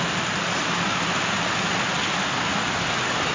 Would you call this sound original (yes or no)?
yes